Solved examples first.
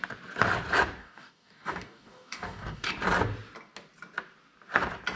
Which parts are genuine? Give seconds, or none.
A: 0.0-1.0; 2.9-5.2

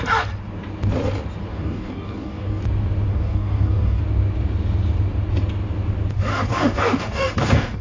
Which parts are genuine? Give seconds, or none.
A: 0.0-1.5; 2.6-3.1; 4.0-6.3

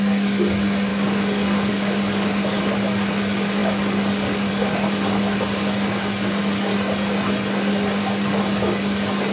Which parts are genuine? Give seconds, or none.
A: 6.7-8.0

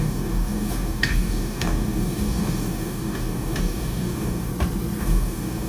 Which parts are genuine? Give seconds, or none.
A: 4.5-5.0

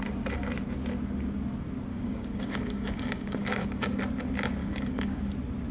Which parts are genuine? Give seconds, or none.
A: 0.0-1.9; 4.0-4.6; 5.2-5.7